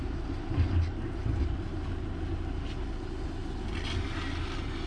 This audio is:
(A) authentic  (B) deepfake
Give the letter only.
A